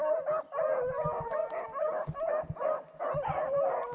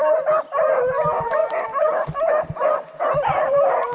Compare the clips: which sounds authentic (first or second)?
first